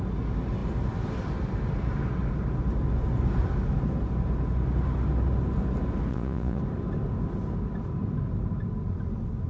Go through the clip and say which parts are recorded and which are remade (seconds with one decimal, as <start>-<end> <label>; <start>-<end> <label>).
0.0-6.1 recorded; 6.1-6.6 remade; 6.6-9.5 recorded